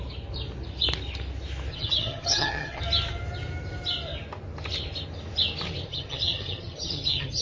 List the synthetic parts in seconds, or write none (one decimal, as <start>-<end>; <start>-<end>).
1.7-2.8; 5.9-7.4